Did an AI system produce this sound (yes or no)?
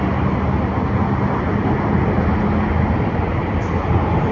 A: no